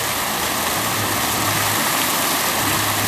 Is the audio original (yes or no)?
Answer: yes